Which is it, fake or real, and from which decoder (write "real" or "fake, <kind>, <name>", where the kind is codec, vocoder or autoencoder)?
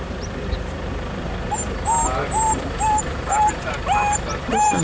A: fake, vocoder, BigVGAN v2